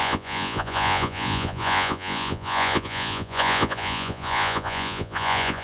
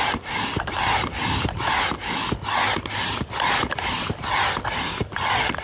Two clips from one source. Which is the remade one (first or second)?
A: first